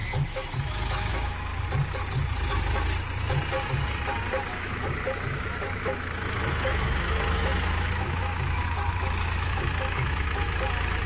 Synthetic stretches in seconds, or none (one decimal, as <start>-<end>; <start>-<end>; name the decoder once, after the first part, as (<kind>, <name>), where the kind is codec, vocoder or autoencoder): 0.0-1.5 (autoencoder, DAC-VAE); 4.5-11.1